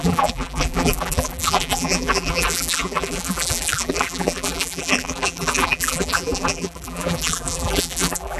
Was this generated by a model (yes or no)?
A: yes